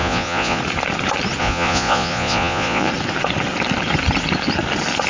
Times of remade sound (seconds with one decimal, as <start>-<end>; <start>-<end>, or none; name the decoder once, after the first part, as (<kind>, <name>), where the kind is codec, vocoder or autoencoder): 0.0-0.6 (vocoder, Vocos); 1.4-2.9